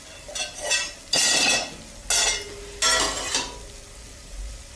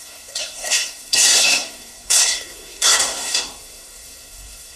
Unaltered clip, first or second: first